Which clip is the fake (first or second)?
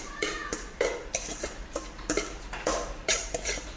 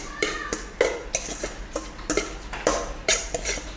first